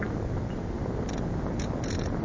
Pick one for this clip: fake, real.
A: real